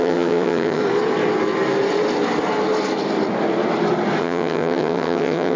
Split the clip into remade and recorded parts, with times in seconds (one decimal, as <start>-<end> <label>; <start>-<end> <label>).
0.0-0.8 remade; 0.8-4.2 recorded; 4.2-5.6 remade